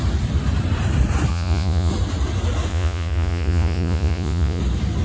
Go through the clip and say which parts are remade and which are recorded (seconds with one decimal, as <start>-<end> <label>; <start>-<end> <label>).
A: 0.0-1.3 recorded; 1.3-1.9 remade; 1.9-2.7 recorded; 2.7-4.6 remade; 4.6-5.0 recorded